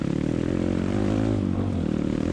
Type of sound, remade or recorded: recorded